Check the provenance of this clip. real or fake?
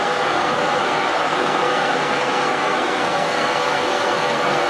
fake